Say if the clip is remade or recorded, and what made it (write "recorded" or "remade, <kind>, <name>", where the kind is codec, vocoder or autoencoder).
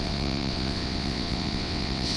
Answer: remade, vocoder, WaveNeXt